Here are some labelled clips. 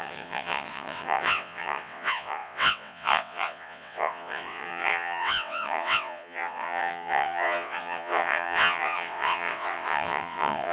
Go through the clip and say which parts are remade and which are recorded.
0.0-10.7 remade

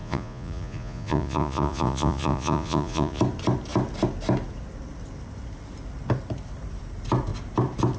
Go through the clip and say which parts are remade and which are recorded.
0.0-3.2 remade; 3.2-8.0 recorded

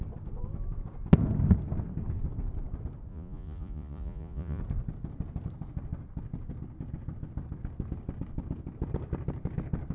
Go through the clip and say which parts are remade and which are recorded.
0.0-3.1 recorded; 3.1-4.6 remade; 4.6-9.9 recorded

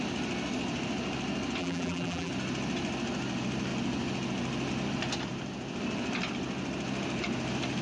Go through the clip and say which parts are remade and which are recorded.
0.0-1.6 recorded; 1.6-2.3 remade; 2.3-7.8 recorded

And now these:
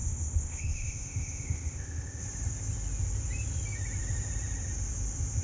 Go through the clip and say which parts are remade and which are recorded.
0.0-2.2 remade; 2.2-5.4 recorded

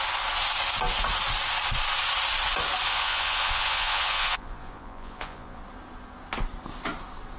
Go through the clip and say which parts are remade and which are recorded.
0.0-2.9 recorded; 2.9-5.6 remade; 5.6-7.4 recorded

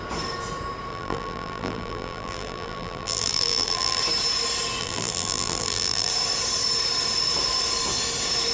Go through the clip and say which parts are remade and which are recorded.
0.0-0.9 recorded; 0.9-4.0 remade; 4.0-4.8 recorded; 4.8-6.1 remade; 6.1-8.5 recorded